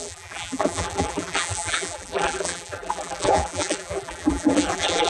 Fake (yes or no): yes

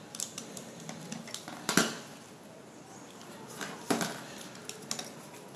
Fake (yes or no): no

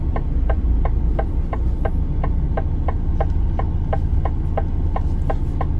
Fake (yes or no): no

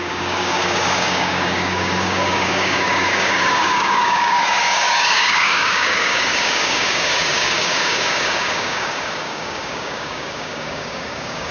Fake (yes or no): yes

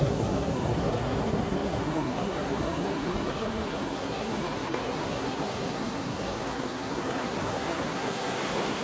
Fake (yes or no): yes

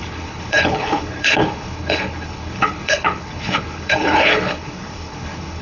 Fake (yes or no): yes